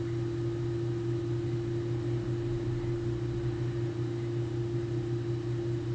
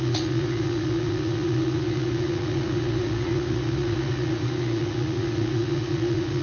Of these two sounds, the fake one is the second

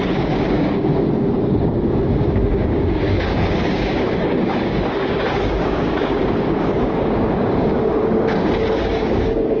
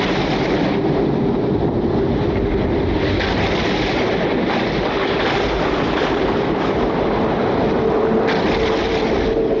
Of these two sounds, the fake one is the first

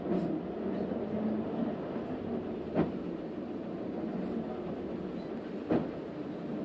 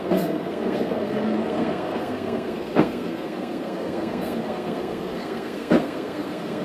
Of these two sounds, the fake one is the second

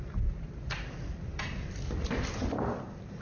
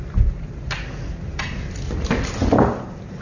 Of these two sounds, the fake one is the first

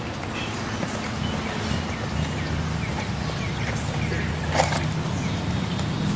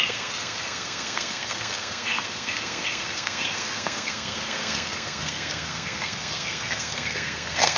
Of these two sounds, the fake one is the second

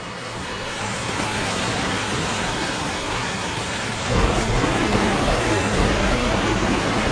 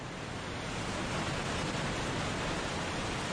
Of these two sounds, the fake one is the first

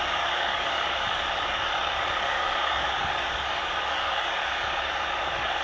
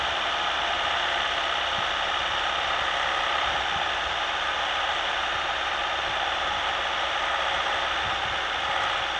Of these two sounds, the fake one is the first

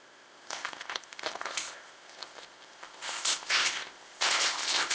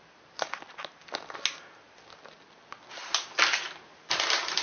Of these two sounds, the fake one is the first